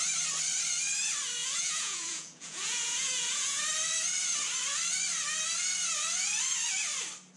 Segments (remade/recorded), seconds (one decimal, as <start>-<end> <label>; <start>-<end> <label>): 0.0-1.4 recorded; 1.4-3.6 remade; 3.6-7.4 recorded